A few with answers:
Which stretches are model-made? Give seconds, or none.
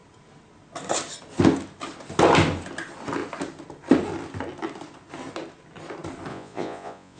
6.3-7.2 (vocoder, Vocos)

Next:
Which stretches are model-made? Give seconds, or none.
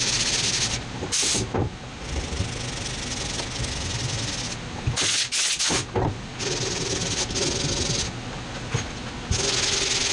none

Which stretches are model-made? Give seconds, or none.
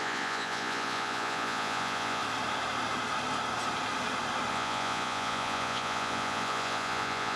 0.0-2.2 (vocoder, Vocos); 4.5-7.4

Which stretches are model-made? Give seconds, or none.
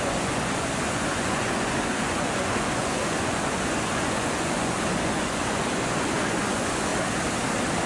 0.0-6.9 (vocoder, Vocos)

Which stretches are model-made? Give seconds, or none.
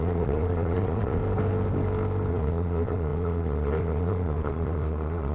0.0-1.2 (vocoder, Vocos); 2.3-5.3